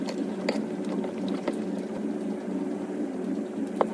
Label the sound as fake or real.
real